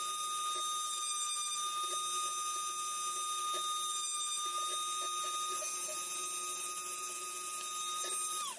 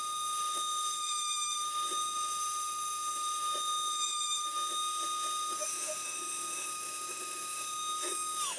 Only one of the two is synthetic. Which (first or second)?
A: second